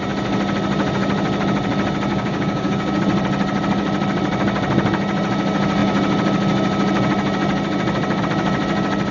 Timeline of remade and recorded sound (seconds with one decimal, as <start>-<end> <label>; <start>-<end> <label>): 0.0-2.1 recorded; 2.1-3.0 remade; 3.0-9.1 recorded